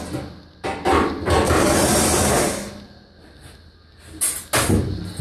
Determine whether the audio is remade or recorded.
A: recorded